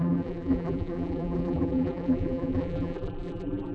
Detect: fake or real fake